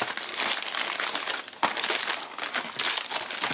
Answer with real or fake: real